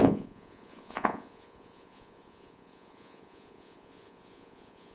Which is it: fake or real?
fake